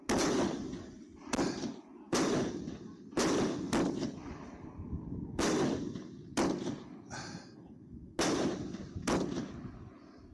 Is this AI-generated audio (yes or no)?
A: no